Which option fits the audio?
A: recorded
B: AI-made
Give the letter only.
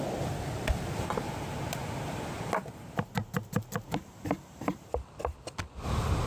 A